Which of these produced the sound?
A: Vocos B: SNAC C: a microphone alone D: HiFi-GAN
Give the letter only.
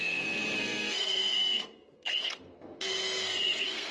B